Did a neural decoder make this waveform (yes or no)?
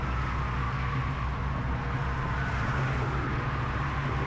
no